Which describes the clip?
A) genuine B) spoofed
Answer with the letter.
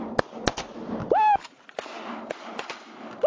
A